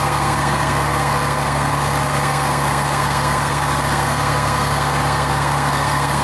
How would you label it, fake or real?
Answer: fake